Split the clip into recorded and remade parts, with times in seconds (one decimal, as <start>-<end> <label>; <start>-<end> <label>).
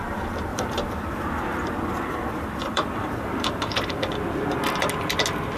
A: 0.0-0.5 recorded; 0.5-3.9 remade; 3.9-5.6 recorded